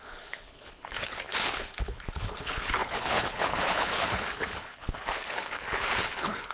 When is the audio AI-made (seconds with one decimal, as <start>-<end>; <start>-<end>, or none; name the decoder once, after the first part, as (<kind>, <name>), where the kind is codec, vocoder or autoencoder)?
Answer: 0.0-6.5 (codec, HILCodec)